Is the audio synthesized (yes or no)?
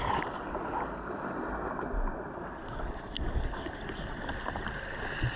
no